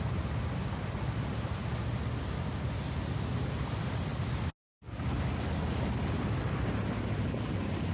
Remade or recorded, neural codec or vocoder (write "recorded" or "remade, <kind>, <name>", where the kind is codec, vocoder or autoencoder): recorded